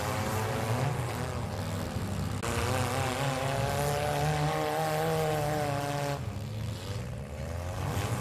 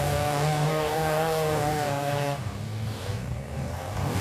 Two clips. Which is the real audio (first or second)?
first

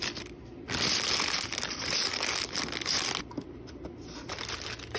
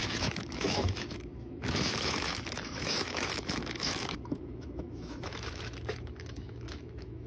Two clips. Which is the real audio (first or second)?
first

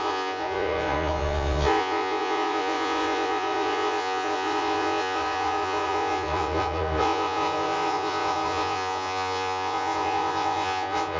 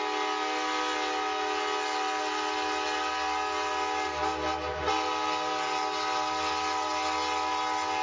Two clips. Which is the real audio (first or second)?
second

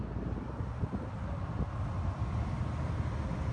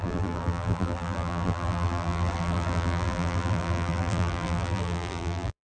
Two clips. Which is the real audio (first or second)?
first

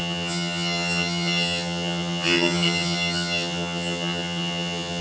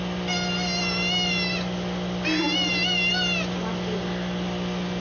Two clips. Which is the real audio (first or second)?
second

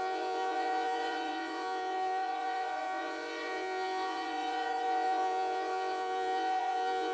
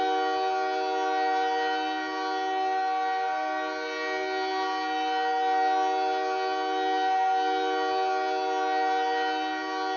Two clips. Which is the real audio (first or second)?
second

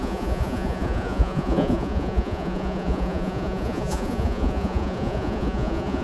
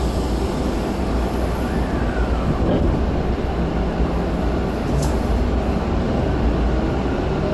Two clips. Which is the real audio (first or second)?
second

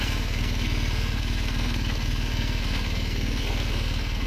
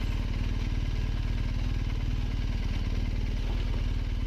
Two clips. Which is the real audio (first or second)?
second